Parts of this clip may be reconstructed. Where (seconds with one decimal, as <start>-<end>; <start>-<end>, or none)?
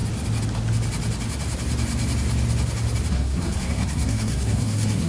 3.1-5.1